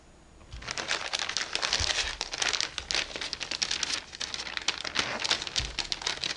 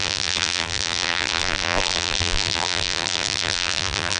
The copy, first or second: second